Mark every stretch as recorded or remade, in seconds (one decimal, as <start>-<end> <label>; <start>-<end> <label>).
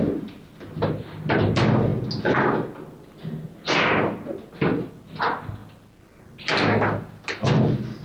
0.0-8.0 recorded